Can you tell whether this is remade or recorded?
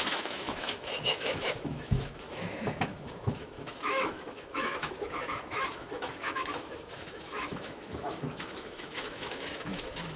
remade